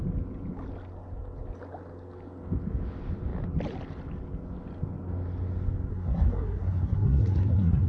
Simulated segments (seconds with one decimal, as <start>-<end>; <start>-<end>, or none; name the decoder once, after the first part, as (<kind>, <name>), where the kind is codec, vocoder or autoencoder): 5.9-7.9 (codec, SNAC)